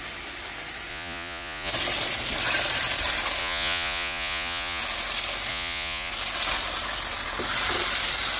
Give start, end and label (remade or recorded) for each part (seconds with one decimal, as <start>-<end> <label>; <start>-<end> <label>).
0.0-0.9 recorded; 0.9-1.7 remade; 1.7-3.4 recorded; 3.4-4.8 remade; 4.8-5.5 recorded; 5.5-6.1 remade; 6.1-8.4 recorded